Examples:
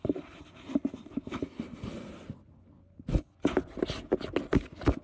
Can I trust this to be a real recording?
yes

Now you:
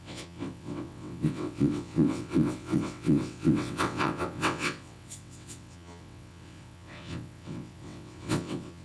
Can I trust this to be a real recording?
no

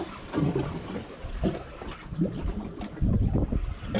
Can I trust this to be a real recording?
yes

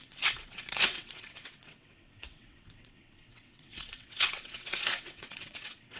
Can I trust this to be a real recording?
no